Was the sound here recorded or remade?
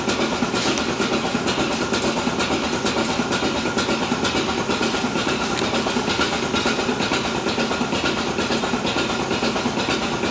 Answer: recorded